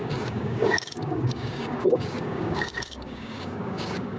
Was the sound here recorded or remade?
remade